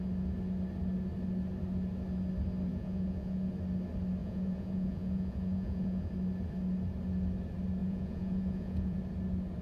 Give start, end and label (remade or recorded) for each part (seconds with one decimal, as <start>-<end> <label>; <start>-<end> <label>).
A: 0.0-2.7 recorded; 2.7-3.5 remade; 3.5-4.2 recorded; 4.2-6.1 remade; 6.1-7.8 recorded; 7.8-9.0 remade; 9.0-9.6 recorded